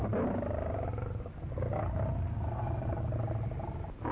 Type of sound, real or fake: real